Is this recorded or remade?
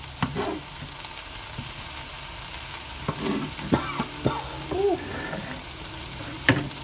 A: recorded